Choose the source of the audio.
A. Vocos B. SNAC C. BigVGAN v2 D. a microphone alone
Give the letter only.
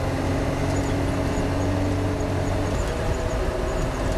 D